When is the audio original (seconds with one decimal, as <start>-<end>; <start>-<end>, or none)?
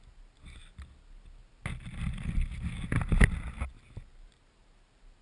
0.0-5.2